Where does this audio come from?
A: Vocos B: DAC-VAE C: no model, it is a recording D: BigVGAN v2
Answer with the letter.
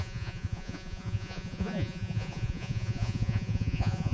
A